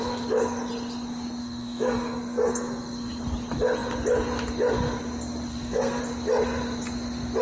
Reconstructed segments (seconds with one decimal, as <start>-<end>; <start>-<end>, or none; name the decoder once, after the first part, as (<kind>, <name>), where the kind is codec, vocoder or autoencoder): 1.4-3.2 (codec, SNAC); 5.5-6.0